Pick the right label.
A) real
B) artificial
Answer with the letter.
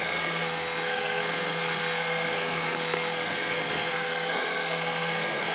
B